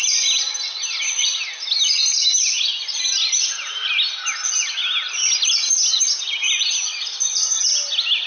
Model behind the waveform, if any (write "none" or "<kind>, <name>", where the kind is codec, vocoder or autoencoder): none